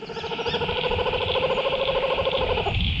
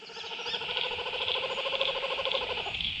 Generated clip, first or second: second